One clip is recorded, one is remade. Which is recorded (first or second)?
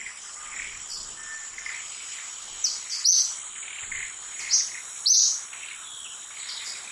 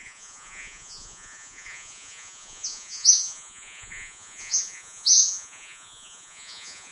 first